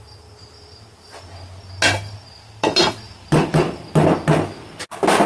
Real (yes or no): yes